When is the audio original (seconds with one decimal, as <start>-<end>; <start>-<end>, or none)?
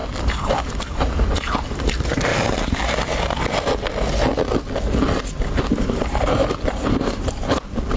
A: 2.3-5.6